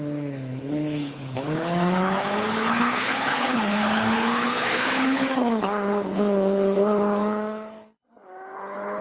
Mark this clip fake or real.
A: fake